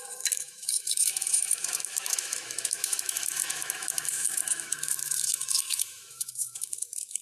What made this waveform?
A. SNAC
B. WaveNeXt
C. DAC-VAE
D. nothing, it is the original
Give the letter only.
C